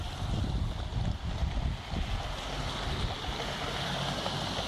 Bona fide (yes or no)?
yes